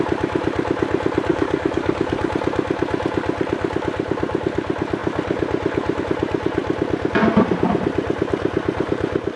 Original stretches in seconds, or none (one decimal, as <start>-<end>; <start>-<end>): 0.0-1.3; 2.3-9.4